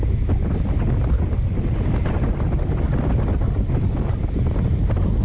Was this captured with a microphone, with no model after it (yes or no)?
yes